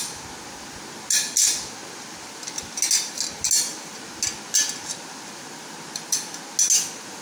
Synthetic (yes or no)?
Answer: no